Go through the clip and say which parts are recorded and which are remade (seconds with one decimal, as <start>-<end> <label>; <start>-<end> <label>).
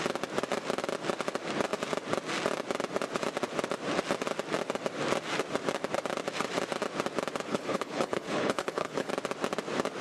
0.0-7.5 recorded; 7.5-9.1 remade; 9.1-10.0 recorded